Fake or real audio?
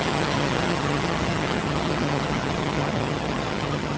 fake